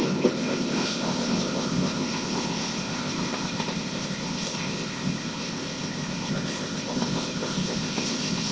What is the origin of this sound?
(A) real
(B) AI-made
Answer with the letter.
B